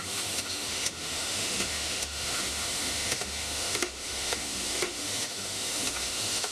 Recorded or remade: remade